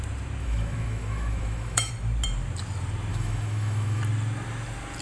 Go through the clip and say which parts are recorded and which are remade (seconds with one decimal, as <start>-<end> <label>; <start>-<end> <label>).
0.0-0.4 recorded; 0.4-1.9 remade; 1.9-3.1 recorded; 3.1-4.0 remade; 4.0-5.0 recorded